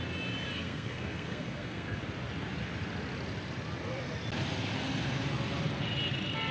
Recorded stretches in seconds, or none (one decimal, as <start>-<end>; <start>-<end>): 0.0-0.5; 2.0-6.5